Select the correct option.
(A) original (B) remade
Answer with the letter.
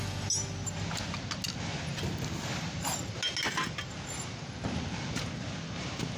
A